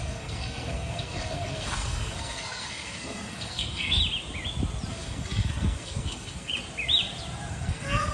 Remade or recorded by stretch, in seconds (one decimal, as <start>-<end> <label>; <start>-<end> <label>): 0.0-4.0 remade; 4.0-4.9 recorded; 4.9-6.5 remade; 6.5-7.5 recorded; 7.5-8.1 remade